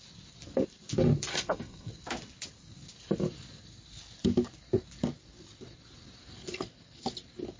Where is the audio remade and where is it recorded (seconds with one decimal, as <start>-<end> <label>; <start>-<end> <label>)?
0.0-1.3 recorded; 1.3-1.9 remade; 1.9-7.6 recorded